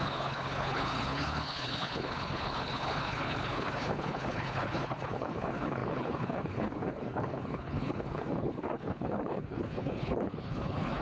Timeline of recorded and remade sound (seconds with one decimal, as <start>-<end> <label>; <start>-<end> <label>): 0.0-11.0 remade